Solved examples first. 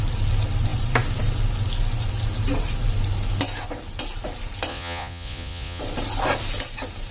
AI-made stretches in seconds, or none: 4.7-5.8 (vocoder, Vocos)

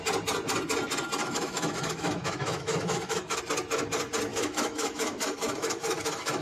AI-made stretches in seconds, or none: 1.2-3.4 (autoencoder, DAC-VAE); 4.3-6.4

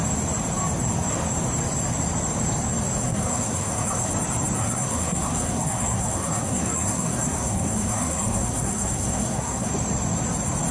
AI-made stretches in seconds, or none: 3.0-4.1 (codec, SNAC); 4.6-9.7